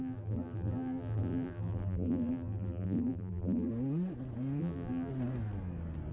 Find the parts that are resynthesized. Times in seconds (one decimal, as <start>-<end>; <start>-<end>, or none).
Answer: 0.0-3.7; 4.6-5.1